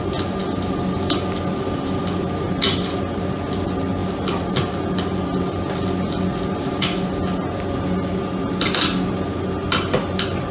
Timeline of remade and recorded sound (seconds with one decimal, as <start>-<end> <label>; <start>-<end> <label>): 0.0-10.5 recorded